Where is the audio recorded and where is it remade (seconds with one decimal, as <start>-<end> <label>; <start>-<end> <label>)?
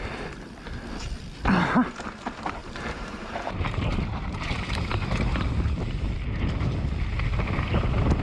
0.0-2.6 recorded; 2.6-4.9 remade; 4.9-8.2 recorded